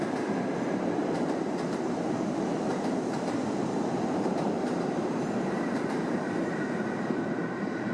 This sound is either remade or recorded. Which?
remade